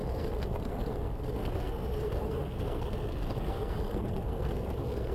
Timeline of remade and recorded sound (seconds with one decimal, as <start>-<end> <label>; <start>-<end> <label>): 0.0-5.1 remade